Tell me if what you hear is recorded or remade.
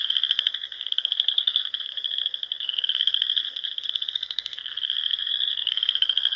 remade